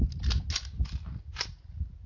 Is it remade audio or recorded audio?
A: recorded